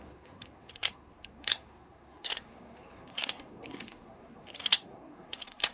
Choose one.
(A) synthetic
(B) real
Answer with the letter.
A